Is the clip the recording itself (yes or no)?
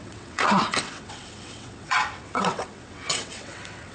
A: no